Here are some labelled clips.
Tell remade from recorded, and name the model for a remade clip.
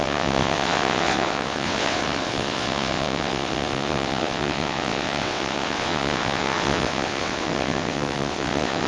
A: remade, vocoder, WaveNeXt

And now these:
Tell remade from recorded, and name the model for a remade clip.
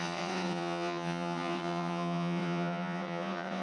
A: remade, vocoder, WaveNeXt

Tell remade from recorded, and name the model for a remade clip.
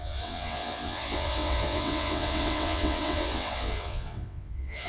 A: remade, vocoder, WaveNeXt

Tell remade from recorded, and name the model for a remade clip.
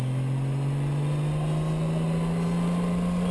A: recorded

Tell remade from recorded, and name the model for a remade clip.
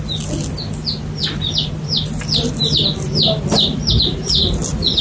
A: recorded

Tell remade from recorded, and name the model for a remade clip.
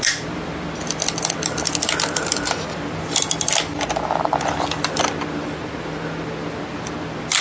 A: recorded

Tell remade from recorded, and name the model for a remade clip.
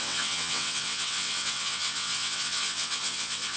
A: remade, vocoder, WaveNeXt